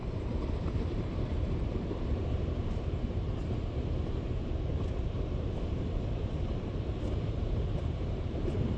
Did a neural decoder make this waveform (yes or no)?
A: yes